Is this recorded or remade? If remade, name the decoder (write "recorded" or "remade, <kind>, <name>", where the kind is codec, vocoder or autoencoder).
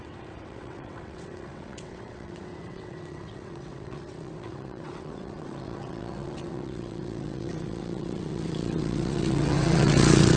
remade, vocoder, WaveNeXt